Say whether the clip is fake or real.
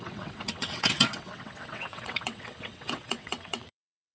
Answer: fake